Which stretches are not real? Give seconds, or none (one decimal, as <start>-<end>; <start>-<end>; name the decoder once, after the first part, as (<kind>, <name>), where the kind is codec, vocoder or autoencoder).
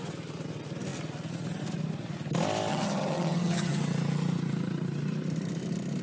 2.7-3.8 (vocoder, HiFi-GAN)